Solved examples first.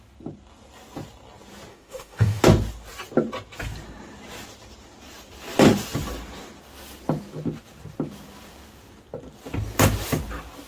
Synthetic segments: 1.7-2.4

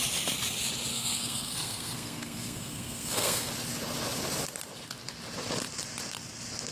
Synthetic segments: 0.9-3.5

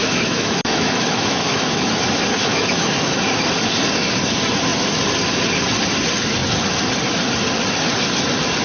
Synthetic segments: 0.0-1.9; 2.4-3.2